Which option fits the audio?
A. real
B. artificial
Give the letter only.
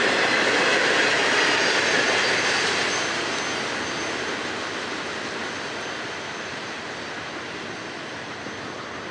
A